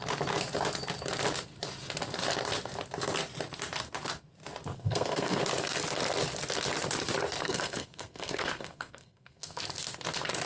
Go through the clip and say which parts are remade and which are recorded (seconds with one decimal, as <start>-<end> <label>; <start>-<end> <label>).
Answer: 0.0-4.7 recorded; 4.7-5.4 remade; 5.4-7.4 recorded; 7.4-9.6 remade; 9.6-10.5 recorded